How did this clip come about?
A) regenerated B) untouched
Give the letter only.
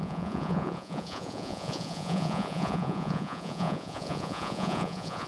A